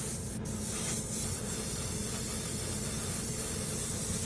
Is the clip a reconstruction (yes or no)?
no